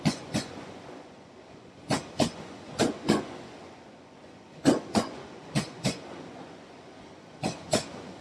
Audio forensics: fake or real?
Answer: fake